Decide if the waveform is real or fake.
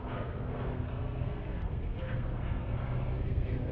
fake